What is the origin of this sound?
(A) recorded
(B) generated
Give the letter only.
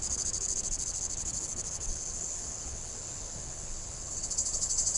B